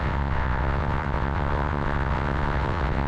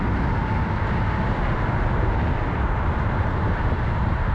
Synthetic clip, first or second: first